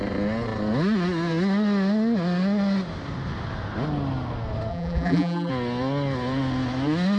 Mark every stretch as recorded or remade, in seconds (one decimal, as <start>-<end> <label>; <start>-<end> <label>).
0.0-4.7 recorded; 4.7-5.5 remade; 5.5-7.2 recorded